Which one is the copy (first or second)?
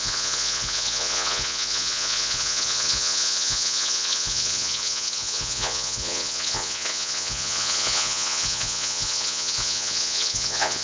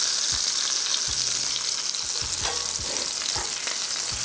first